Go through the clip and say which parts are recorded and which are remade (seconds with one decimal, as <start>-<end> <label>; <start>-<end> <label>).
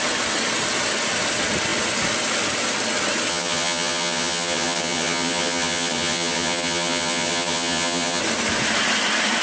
0.0-3.3 recorded; 3.3-8.2 remade; 8.2-9.4 recorded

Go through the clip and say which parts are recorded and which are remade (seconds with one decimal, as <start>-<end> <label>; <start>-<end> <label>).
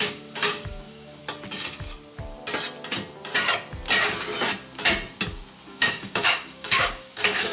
0.0-1.2 remade; 1.2-5.7 recorded; 5.7-7.5 remade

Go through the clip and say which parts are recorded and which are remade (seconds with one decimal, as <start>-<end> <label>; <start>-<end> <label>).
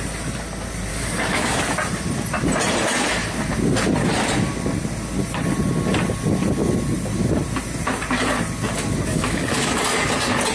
0.0-0.9 recorded; 0.9-1.6 remade; 1.6-9.1 recorded; 9.1-9.7 remade; 9.7-10.5 recorded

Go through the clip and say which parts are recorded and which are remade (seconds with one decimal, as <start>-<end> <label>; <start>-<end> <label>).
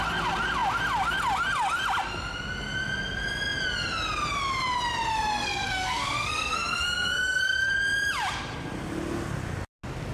0.0-5.1 recorded; 5.1-7.7 remade; 7.7-10.1 recorded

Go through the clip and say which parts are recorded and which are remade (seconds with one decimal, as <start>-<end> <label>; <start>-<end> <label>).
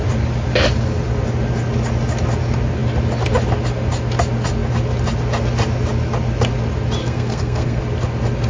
0.0-7.0 recorded; 7.0-7.8 remade; 7.8-8.5 recorded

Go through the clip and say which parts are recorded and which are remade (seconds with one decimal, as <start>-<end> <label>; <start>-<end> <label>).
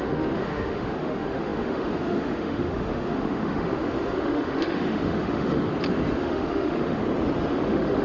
0.0-5.7 remade; 5.7-6.2 recorded; 6.2-7.0 remade; 7.0-7.5 recorded; 7.5-8.0 remade